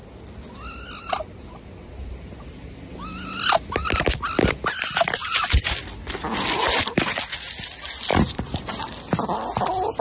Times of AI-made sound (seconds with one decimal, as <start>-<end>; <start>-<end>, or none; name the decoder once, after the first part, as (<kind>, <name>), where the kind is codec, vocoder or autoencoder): 8.1-8.6 (vocoder, BigVGAN v2)

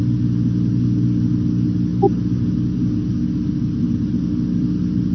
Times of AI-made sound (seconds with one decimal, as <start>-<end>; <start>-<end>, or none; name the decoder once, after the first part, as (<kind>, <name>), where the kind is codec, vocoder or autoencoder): none